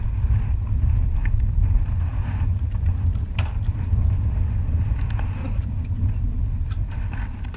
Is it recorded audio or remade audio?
recorded